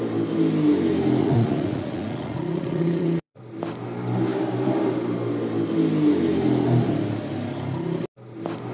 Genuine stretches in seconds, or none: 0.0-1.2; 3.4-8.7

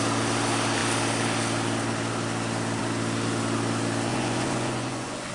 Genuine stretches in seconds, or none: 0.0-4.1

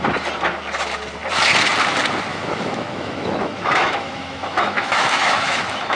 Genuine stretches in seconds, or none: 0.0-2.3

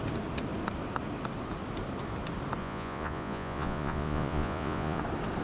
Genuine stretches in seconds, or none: 0.0-2.6; 5.0-5.4

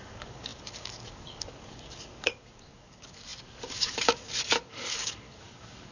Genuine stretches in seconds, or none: none

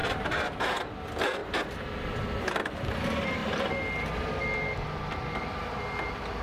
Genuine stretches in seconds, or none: 0.0-6.4

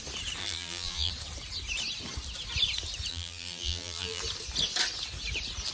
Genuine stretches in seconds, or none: 0.0-0.4; 1.1-3.1; 4.2-5.7